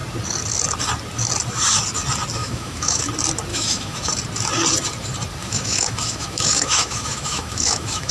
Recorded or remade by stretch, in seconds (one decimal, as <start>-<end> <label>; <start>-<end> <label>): 0.0-2.4 recorded; 2.4-3.0 remade; 3.0-3.5 recorded; 3.5-4.1 remade; 4.1-5.4 recorded; 5.4-8.1 remade